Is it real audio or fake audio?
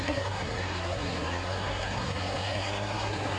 fake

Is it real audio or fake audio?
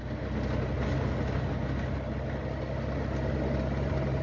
real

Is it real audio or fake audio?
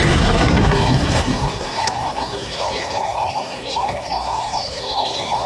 fake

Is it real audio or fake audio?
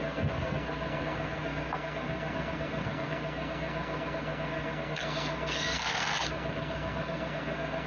fake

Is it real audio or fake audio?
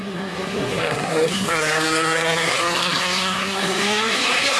fake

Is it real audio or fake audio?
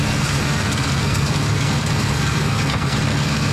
fake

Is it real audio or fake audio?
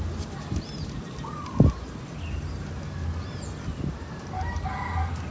real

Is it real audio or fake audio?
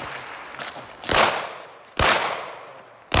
real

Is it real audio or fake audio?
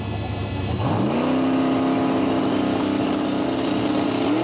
real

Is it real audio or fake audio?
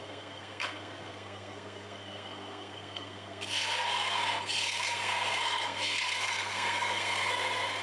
fake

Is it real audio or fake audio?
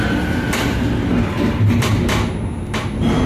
real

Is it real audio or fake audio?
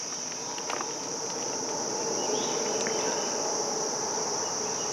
real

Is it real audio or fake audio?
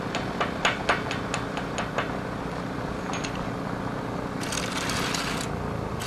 real